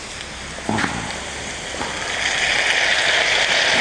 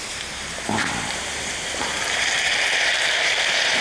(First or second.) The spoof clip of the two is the second